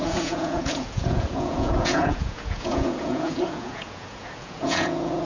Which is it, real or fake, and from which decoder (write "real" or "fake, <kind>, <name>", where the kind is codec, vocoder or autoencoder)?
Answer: fake, vocoder, Vocos